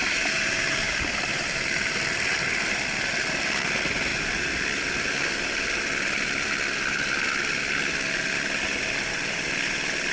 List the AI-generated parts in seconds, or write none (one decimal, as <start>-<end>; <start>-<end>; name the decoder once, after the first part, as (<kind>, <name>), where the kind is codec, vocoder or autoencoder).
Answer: none

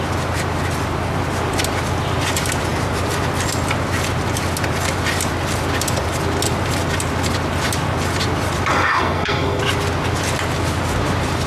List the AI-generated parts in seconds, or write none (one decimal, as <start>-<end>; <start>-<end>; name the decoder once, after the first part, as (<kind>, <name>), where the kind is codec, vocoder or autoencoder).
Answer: 8.7-9.6 (codec, SNAC)

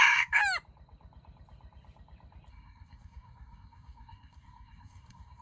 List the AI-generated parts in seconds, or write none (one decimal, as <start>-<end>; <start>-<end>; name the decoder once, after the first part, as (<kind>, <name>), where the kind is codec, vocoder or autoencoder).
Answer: 0.0-0.4 (codec, SNAC); 2.5-5.4

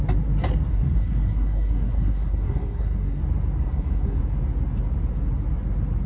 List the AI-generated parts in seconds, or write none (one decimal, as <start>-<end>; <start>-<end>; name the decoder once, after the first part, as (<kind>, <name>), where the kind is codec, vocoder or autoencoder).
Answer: 0.7-3.2 (codec, SNAC); 3.6-4.2

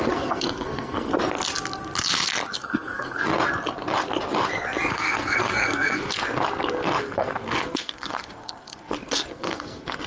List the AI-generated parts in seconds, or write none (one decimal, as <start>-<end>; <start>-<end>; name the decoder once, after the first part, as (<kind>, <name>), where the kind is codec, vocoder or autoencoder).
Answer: 0.0-1.1 (codec, SNAC); 2.5-3.3; 4.9-6.1; 7.0-10.1

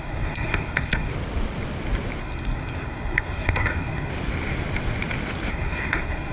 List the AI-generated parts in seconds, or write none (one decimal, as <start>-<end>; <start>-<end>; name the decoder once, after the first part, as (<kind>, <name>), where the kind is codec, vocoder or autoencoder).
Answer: 0.0-1.1 (codec, SNAC); 2.2-4.1; 5.5-6.3